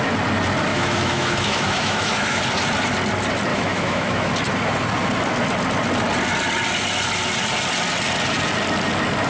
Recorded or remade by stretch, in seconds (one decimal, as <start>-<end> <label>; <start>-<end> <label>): 0.0-0.7 recorded; 0.7-2.4 remade; 2.4-3.5 recorded; 3.5-4.3 remade; 4.3-9.3 recorded